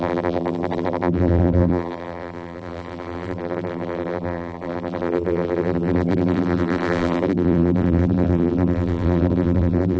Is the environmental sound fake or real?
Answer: fake